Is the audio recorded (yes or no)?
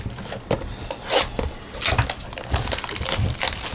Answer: yes